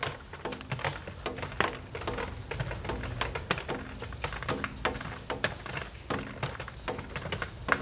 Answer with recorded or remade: recorded